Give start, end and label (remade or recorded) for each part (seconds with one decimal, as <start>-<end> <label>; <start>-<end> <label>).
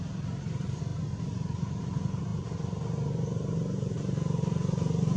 0.0-5.2 recorded